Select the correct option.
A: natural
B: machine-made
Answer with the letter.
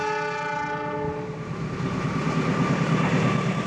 A